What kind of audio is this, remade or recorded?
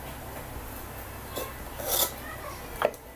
recorded